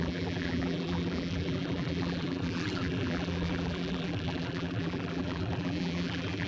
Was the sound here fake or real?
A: fake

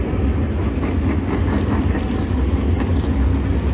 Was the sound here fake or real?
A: real